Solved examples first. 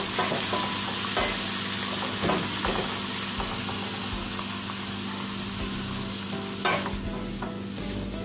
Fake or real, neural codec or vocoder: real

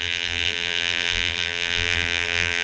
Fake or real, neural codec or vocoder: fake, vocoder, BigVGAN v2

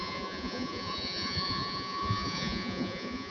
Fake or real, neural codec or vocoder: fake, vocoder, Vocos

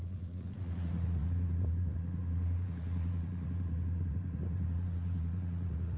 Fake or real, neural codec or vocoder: fake, vocoder, Vocos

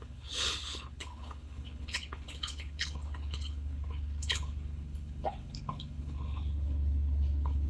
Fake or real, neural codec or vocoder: fake, codec, HILCodec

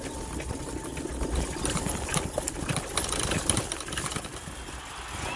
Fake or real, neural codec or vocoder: real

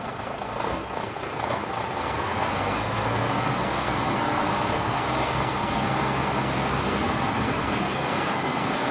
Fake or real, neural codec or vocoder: fake, codec, SNAC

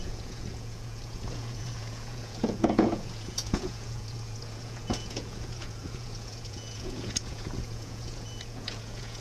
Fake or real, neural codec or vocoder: fake, vocoder, Vocos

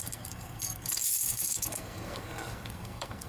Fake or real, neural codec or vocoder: fake, codec, SNAC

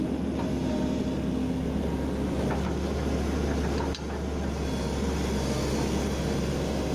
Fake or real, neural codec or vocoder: real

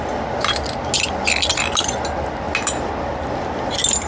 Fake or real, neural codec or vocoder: real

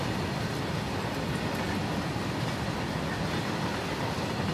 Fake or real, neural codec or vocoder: real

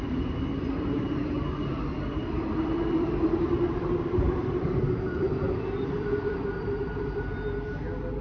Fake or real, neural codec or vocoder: fake, vocoder, BigVGAN v2